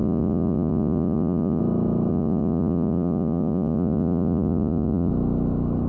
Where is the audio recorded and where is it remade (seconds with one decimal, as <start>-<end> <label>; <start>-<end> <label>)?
0.0-1.6 remade; 1.6-2.1 recorded; 2.1-5.1 remade; 5.1-5.9 recorded